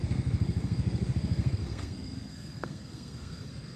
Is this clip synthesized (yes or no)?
yes